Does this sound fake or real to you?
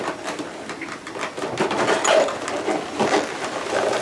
real